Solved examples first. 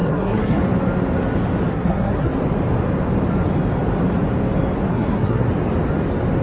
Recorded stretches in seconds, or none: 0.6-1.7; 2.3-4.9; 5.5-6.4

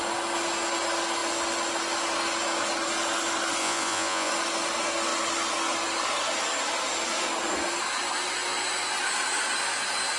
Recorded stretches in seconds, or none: 0.0-3.6; 4.3-10.2